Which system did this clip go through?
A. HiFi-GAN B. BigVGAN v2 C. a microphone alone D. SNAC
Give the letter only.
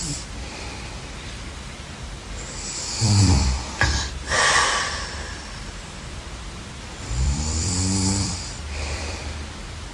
B